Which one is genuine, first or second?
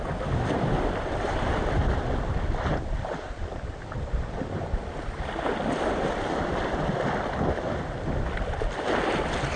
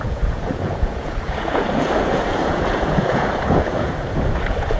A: first